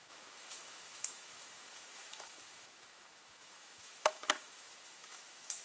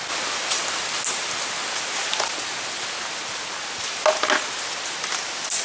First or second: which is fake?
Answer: first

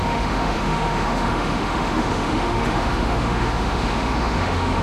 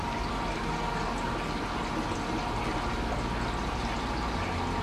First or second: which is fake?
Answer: first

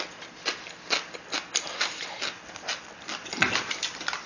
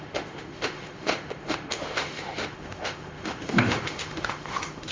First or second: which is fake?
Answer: second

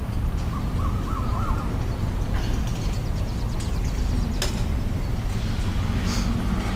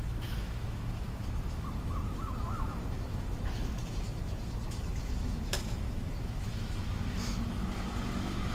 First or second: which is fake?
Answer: second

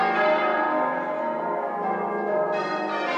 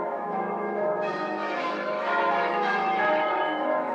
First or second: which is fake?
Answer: second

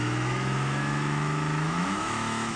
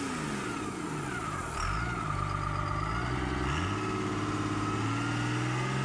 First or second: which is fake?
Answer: first